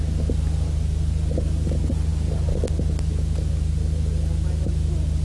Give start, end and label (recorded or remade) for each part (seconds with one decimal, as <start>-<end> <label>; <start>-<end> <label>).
0.0-5.2 recorded